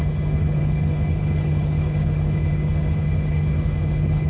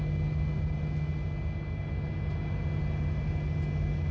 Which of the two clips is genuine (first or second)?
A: second